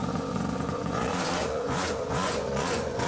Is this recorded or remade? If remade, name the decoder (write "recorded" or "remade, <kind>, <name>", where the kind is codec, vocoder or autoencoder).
remade, vocoder, Vocos